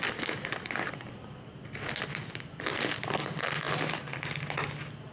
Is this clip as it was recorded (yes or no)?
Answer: yes